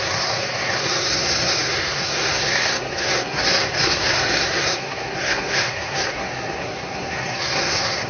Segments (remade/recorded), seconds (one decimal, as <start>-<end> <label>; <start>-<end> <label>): 0.0-8.1 remade